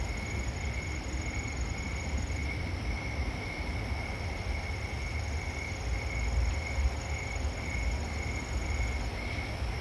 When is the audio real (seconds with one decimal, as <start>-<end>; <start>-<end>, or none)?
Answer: 0.0-9.8